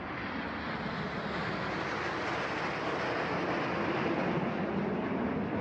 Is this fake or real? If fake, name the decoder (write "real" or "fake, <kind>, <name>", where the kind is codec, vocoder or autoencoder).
real